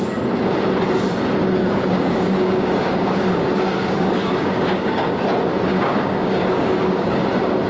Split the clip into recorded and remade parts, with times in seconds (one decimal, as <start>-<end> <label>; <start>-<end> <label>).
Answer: 0.0-1.6 recorded; 1.6-5.1 remade; 5.1-5.7 recorded; 5.7-7.2 remade; 7.2-7.7 recorded

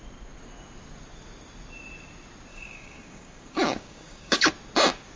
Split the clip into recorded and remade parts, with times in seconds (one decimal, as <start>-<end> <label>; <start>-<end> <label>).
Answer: 0.0-2.5 recorded; 2.5-4.5 remade; 4.5-5.2 recorded